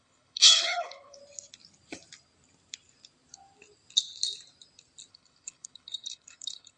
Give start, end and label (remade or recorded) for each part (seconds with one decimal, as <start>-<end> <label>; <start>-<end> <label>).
0.0-1.2 remade; 1.2-5.1 recorded; 5.1-6.8 remade